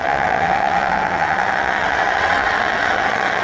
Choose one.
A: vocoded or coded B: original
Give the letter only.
A